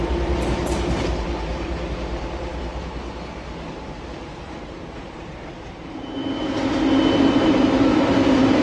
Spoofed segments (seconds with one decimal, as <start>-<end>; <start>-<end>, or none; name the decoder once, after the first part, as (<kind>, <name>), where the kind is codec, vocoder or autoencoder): 0.0-2.7 (vocoder, BigVGAN v2); 3.7-6.2; 7.1-8.6